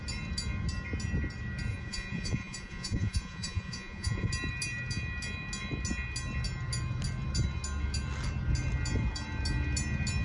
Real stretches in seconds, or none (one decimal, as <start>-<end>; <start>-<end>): 0.0-1.7; 4.3-10.2